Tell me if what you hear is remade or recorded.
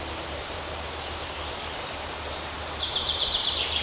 remade